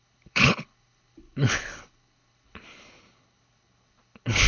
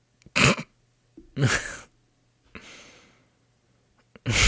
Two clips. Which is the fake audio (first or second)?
first